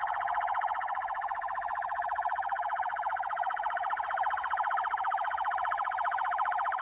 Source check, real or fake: fake